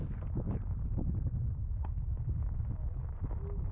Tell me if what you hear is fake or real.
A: real